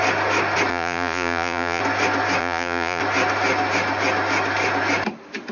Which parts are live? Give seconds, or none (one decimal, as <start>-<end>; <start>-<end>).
0.0-0.7; 1.8-2.4; 3.0-5.5